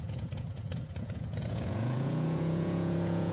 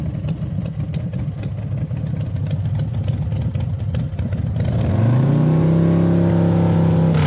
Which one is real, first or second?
second